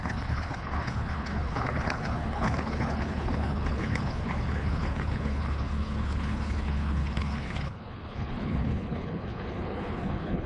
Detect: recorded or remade remade